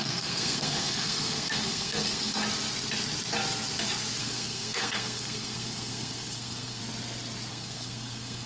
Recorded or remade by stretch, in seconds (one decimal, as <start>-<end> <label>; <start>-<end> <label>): 0.0-2.4 remade; 2.4-4.2 recorded; 4.2-6.8 remade; 6.8-7.5 recorded; 7.5-8.5 remade